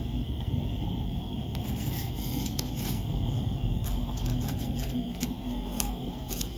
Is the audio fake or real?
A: fake